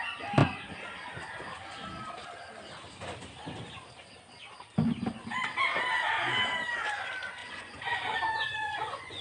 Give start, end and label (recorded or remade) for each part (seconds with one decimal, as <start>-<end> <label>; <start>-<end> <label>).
0.0-7.4 recorded; 7.4-9.2 remade